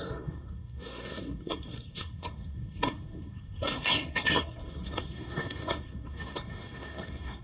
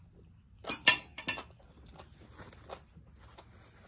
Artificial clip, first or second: first